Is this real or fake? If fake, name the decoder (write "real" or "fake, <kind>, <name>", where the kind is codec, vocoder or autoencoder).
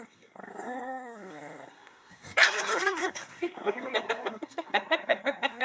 fake, codec, SNAC